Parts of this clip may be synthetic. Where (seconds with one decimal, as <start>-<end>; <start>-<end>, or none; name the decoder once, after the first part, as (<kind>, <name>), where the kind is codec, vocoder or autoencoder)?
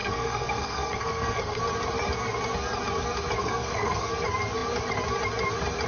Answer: 0.0-1.6 (codec, SNAC); 3.4-4.1